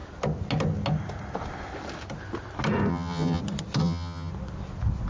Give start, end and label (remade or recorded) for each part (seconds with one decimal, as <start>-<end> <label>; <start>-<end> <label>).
0.0-2.9 recorded; 2.9-3.4 remade; 3.4-3.8 recorded; 3.8-4.3 remade; 4.3-5.1 recorded